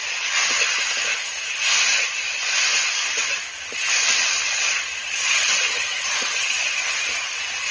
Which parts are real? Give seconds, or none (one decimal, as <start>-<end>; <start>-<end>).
0.0-5.0; 6.5-7.7